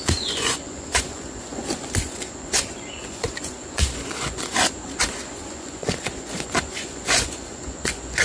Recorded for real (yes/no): no